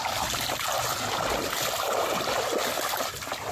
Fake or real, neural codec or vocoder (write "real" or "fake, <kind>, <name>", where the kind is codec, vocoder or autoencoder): real